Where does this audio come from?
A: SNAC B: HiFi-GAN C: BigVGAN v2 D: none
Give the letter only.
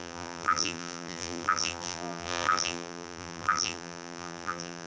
C